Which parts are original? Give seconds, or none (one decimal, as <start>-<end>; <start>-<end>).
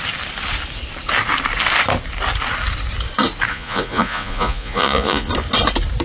0.0-3.5; 5.3-6.0